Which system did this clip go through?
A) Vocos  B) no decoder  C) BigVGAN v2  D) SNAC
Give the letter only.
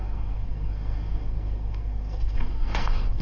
D